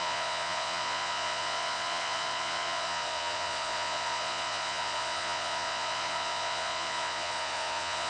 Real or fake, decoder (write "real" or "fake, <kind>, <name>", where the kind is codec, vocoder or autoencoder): fake, vocoder, Vocos